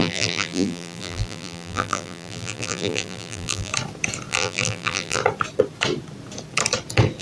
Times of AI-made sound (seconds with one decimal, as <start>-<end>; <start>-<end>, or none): 0.0-3.7; 4.3-5.2